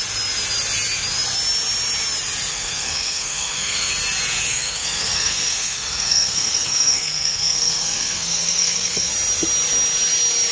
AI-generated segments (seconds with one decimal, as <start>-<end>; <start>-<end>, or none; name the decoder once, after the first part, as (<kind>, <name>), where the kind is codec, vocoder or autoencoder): 2.5-3.9 (codec, SNAC); 4.5-9.1

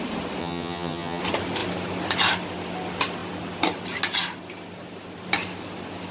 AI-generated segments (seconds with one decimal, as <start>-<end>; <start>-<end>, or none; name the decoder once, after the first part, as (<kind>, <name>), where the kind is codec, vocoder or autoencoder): 0.4-1.2 (vocoder, HiFi-GAN)

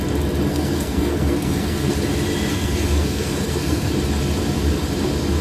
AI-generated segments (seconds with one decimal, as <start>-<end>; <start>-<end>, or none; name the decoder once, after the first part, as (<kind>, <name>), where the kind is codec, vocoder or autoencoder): 0.5-1.9 (codec, SNAC); 2.5-3.9

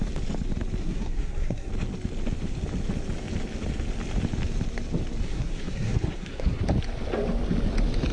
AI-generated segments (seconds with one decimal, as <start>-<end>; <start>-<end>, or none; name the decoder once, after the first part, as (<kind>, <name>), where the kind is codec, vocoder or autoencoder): 0.8-1.7 (codec, SNAC); 5.2-6.6